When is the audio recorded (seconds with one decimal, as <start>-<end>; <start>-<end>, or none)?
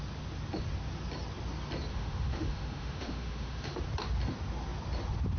0.0-1.9; 3.8-5.4